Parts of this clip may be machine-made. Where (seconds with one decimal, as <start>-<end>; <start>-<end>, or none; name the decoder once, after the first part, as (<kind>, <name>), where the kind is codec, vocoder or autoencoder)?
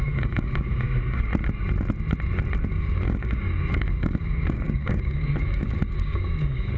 0.0-1.3 (codec, DAC); 2.7-6.8